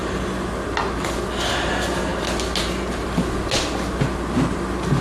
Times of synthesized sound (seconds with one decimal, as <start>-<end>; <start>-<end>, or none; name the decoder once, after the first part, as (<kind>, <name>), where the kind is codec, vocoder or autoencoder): none